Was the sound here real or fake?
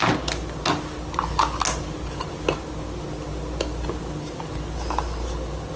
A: real